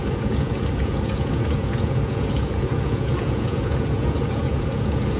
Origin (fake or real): fake